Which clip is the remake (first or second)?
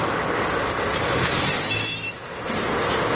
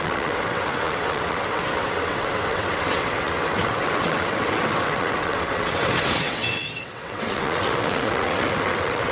second